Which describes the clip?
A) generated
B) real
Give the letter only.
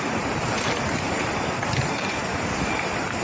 A